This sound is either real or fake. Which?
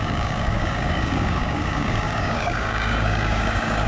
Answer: fake